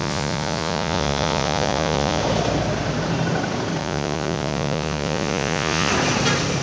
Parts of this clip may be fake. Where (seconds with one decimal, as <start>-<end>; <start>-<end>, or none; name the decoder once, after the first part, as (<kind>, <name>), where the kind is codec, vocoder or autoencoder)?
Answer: 0.0-2.2 (vocoder, Vocos); 3.8-5.9